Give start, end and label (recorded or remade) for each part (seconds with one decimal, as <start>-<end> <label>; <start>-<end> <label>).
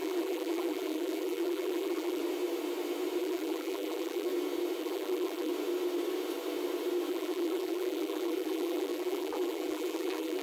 0.0-2.2 remade; 2.2-3.2 recorded; 3.2-4.3 remade; 4.3-4.8 recorded; 4.8-5.5 remade; 5.5-7.1 recorded; 7.1-10.4 remade